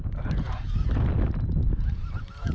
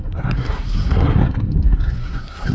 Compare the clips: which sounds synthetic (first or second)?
second